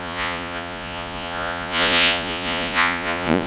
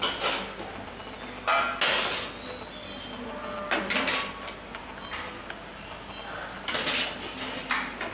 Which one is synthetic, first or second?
first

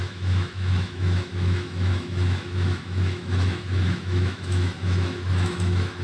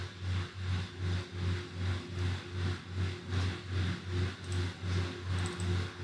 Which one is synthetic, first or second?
first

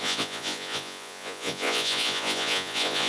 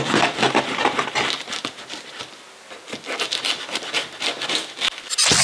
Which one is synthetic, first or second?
first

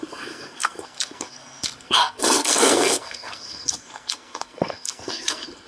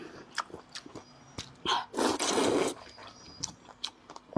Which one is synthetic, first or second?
first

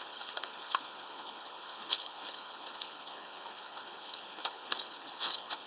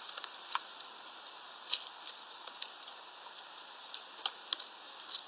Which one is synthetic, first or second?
first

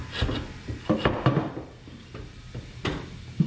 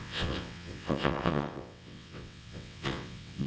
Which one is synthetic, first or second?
second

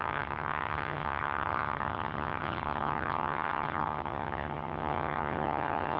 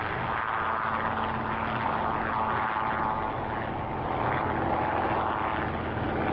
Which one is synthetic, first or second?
first